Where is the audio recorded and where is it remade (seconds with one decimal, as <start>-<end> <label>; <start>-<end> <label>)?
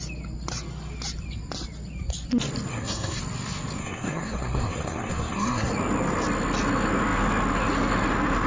0.0-2.7 recorded; 2.7-3.2 remade; 3.2-3.8 recorded; 3.8-5.7 remade; 5.7-8.5 recorded